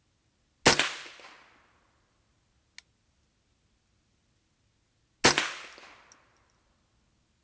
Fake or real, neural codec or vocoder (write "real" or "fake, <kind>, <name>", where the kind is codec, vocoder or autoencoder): real